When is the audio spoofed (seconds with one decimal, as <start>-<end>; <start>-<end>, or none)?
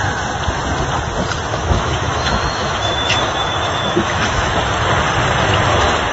1.5-4.6